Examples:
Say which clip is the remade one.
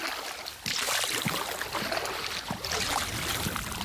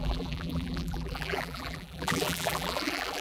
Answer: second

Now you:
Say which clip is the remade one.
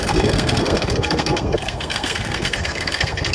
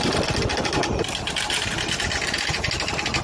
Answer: first